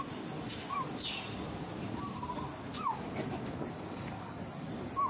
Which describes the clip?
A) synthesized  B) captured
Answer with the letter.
B